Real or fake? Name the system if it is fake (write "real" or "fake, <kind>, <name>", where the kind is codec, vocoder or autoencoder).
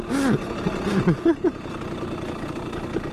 real